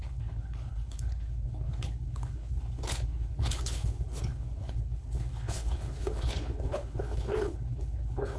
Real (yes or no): no